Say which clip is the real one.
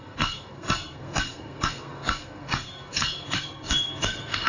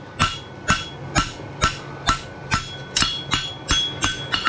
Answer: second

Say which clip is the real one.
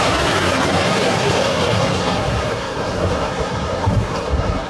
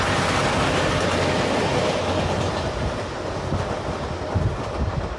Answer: second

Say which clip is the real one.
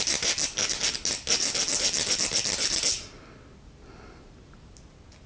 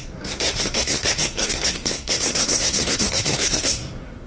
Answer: first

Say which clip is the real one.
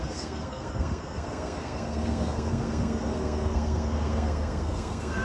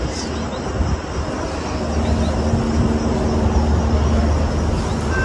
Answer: second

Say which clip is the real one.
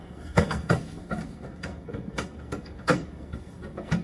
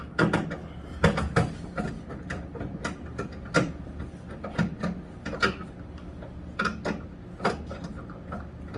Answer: second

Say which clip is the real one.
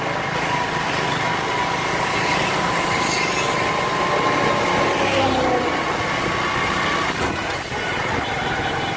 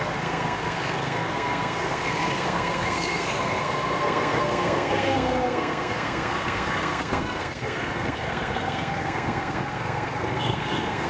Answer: first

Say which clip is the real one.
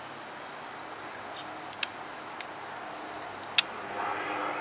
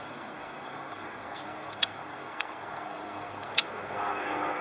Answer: first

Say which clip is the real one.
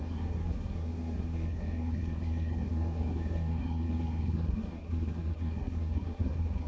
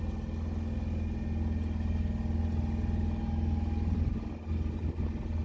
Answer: second